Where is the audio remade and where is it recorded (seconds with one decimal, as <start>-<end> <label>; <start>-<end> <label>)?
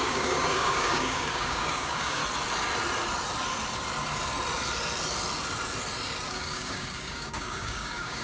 0.0-2.2 remade; 2.2-6.3 recorded; 6.3-8.2 remade